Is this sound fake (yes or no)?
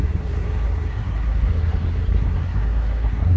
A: yes